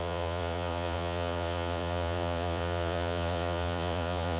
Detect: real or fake fake